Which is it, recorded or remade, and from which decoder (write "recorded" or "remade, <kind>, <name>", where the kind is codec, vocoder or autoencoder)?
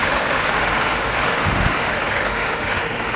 remade, autoencoder, DAC-VAE